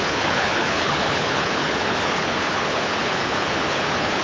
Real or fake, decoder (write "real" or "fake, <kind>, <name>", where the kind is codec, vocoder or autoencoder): fake, codec, HILCodec